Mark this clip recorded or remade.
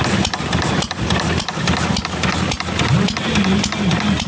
recorded